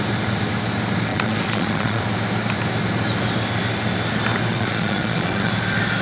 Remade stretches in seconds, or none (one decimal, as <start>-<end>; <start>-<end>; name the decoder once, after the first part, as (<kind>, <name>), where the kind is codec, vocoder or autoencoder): 1.1-2.0 (vocoder, Vocos); 4.5-5.5